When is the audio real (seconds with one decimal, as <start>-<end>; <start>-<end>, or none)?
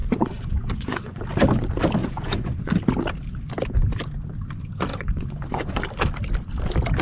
1.2-2.0; 2.7-4.9; 5.8-7.0